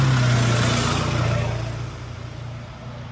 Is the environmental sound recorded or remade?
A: recorded